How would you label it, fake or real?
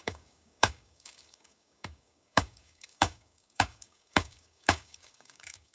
fake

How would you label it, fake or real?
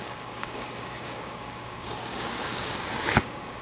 fake